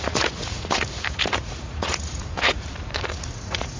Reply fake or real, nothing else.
fake